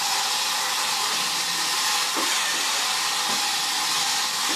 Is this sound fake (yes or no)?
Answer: no